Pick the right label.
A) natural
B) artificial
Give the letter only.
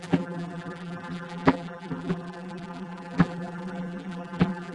B